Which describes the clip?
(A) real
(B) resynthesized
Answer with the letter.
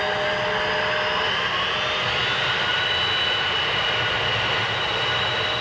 A